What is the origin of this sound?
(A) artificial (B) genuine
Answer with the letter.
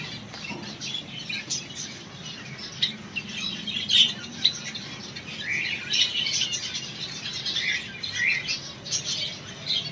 B